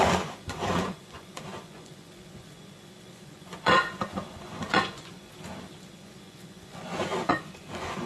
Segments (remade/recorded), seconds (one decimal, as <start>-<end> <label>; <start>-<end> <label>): 0.0-5.3 remade; 5.3-5.9 recorded; 5.9-8.1 remade